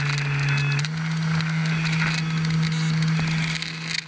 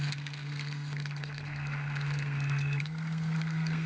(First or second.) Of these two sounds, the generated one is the second